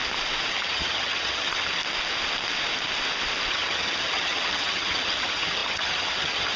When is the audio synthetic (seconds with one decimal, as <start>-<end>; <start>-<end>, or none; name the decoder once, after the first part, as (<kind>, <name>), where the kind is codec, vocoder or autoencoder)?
0.5-1.8 (vocoder, HiFi-GAN); 3.5-6.6